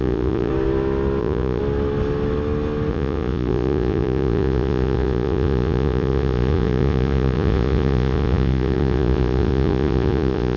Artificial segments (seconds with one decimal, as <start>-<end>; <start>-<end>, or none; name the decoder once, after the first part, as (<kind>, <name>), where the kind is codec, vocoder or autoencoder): 0.0-0.5 (vocoder, Vocos); 1.2-1.6; 2.9-10.6